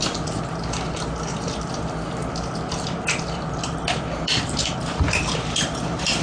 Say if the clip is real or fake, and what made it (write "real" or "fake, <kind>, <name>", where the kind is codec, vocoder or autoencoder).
fake, vocoder, BigVGAN v2